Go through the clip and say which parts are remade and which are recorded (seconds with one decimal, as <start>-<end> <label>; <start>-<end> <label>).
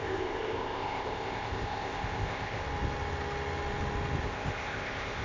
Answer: 0.0-2.6 remade; 2.6-4.2 recorded; 4.2-5.2 remade